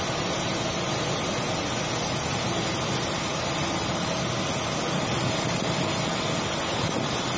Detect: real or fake real